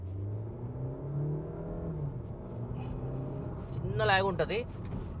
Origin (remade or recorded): recorded